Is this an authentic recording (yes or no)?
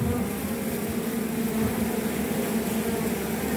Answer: yes